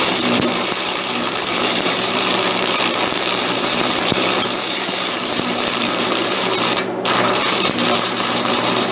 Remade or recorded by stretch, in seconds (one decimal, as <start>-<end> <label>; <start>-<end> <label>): 0.0-2.3 remade; 2.3-3.4 recorded; 3.4-8.9 remade